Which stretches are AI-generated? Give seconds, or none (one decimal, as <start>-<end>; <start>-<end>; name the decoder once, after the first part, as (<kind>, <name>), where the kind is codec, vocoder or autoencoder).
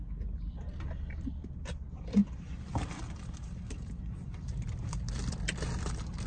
2.2-5.1 (vocoder, BigVGAN v2)